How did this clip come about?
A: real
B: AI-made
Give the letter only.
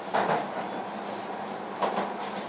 A